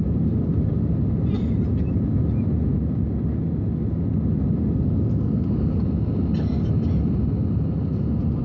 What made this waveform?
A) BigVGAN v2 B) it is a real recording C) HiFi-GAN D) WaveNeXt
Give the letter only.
B